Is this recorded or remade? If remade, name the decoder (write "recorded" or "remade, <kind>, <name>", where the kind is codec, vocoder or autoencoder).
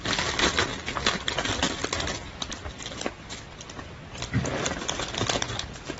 recorded